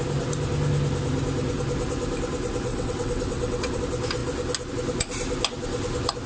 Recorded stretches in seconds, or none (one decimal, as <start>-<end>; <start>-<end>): 0.0-2.7; 3.8-6.3